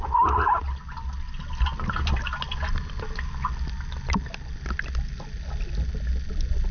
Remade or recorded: recorded